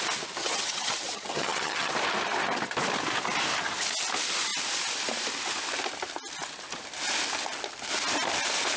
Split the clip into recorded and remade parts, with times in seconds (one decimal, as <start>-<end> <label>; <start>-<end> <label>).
0.0-0.4 recorded; 0.4-1.9 remade; 1.9-8.8 recorded